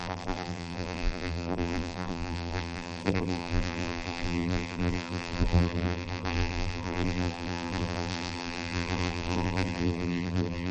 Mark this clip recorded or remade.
remade